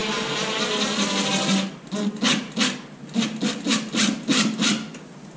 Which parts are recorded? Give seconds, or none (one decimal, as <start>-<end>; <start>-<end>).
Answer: 0.0-5.4

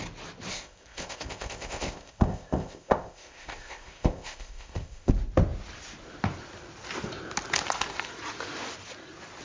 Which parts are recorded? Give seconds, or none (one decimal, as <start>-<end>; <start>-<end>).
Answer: 0.0-0.5; 5.1-9.4

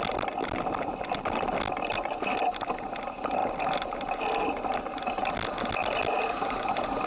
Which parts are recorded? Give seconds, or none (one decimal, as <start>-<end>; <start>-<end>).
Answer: 0.0-7.1

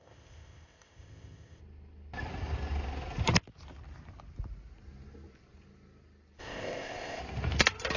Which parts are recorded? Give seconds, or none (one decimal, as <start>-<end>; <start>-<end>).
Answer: 1.6-6.4; 7.2-8.0

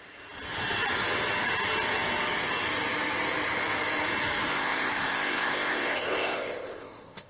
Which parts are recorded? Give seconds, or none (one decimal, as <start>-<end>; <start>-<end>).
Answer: 0.0-4.5